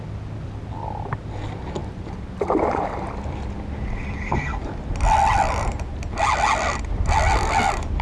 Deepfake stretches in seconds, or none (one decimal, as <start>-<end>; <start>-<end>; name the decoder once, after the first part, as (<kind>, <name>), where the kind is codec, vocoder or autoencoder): none

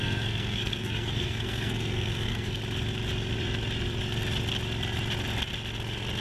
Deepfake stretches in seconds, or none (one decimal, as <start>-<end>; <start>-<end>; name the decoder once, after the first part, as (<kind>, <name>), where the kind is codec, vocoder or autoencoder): 0.0-2.6 (codec, SNAC)

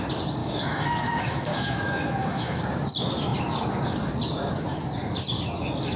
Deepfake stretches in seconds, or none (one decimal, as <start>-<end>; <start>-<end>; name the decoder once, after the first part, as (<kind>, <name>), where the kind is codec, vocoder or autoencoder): 0.4-2.6 (autoencoder, DAC-VAE)

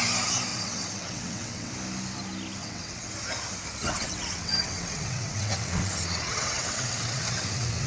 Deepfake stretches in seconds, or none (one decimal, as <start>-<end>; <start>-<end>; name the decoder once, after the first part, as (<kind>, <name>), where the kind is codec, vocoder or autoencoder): 0.5-1.7 (vocoder, WaveNeXt); 2.6-3.1; 3.8-7.9

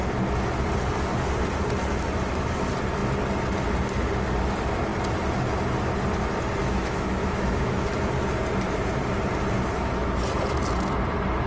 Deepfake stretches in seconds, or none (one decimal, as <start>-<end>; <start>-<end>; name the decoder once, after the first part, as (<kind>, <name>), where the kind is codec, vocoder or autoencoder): 6.6-7.9 (autoencoder, DAC-VAE)

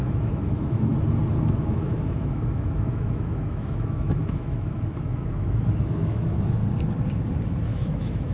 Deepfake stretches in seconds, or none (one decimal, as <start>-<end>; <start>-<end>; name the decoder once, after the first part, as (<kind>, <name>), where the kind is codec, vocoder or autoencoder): 0.0-0.9 (autoencoder, DAC-VAE); 1.5-6.6; 7.7-8.3